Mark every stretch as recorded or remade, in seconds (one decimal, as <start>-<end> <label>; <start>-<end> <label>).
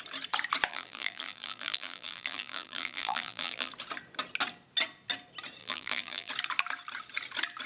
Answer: 0.0-0.7 recorded; 0.7-3.7 remade; 3.7-5.6 recorded; 5.6-6.3 remade; 6.3-7.7 recorded